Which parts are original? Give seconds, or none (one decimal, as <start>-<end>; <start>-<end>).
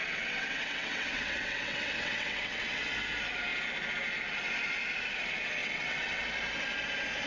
2.9-5.6; 6.2-7.3